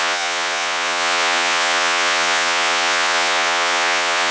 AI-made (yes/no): yes